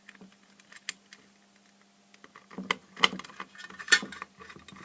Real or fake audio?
real